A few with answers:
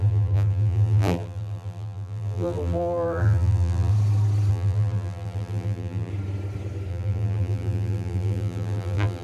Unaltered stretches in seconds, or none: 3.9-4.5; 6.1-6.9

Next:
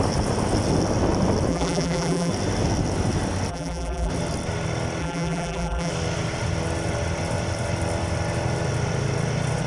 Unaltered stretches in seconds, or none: 0.0-1.5; 2.3-3.5; 4.1-5.0; 5.9-9.7

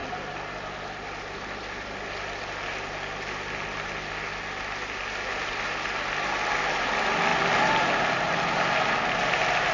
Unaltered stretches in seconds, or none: 0.0-7.3; 8.1-9.7